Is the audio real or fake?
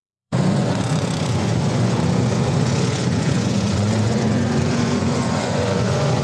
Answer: fake